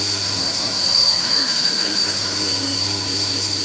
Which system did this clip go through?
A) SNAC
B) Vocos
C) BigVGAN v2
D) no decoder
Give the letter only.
A